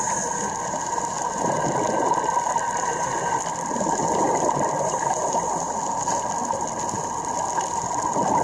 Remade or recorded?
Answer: recorded